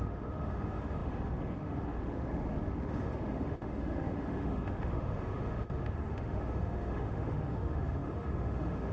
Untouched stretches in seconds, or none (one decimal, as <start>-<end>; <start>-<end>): none